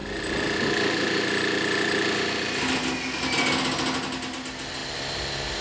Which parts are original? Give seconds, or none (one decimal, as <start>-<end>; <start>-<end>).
0.0-5.6